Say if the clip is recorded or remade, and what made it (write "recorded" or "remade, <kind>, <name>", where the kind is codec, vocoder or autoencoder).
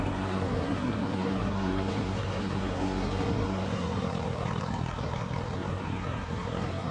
remade, codec, SNAC